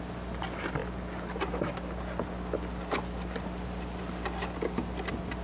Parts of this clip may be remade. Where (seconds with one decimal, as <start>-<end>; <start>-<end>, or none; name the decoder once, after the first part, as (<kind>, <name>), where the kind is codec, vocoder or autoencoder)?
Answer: none